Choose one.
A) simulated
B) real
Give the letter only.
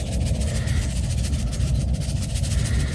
B